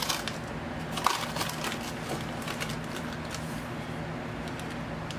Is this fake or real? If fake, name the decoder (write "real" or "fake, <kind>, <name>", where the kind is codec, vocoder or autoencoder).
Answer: real